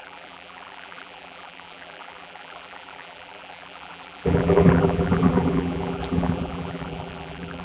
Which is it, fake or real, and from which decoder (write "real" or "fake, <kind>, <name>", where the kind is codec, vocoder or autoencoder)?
fake, vocoder, BigVGAN v2